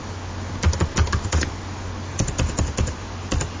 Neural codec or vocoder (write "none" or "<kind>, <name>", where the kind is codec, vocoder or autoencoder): none